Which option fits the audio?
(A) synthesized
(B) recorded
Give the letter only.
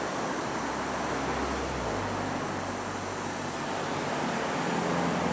B